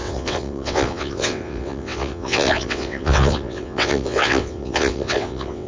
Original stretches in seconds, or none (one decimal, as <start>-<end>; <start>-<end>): none